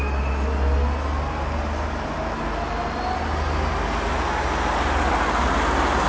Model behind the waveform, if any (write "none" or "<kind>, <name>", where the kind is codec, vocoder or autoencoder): none